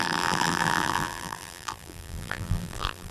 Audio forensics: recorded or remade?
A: remade